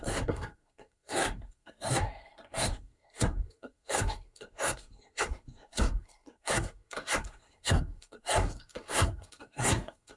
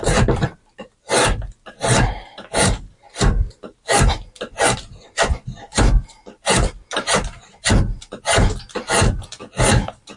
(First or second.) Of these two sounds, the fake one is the first